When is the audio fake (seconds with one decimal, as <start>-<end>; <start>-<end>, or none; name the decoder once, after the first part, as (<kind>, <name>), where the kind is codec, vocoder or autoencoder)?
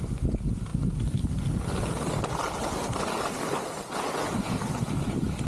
none